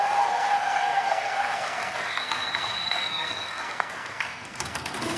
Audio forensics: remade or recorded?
remade